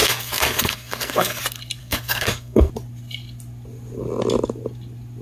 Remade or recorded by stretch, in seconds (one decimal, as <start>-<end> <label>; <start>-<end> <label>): 0.0-1.4 remade; 1.4-1.8 recorded; 1.8-2.7 remade; 2.7-5.2 recorded